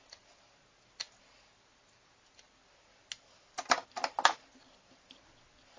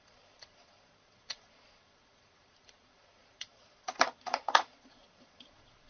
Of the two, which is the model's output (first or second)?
second